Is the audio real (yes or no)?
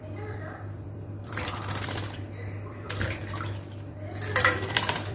no